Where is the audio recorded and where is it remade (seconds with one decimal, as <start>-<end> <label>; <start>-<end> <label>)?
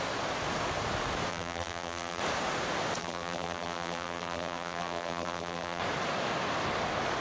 0.0-1.3 recorded; 1.3-2.2 remade; 2.2-3.0 recorded; 3.0-5.8 remade; 5.8-7.2 recorded